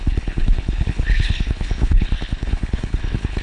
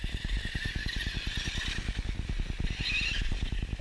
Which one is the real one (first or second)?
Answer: second